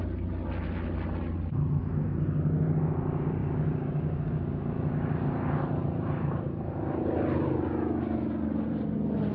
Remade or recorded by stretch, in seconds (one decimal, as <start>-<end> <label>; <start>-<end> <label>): 0.0-3.4 recorded; 3.4-4.6 remade; 4.6-9.3 recorded